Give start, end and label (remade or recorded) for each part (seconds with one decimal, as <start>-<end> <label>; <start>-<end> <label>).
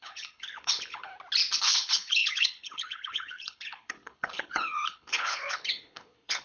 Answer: 0.0-1.1 remade; 1.1-1.6 recorded; 1.6-6.4 remade